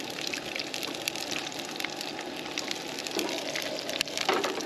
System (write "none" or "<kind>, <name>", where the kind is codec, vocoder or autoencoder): none